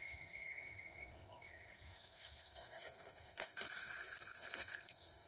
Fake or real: fake